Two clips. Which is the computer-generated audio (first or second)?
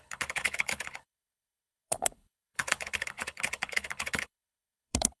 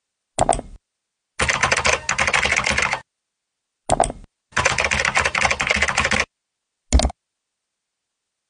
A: first